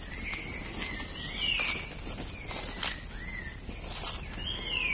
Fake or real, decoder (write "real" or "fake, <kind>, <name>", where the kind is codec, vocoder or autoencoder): real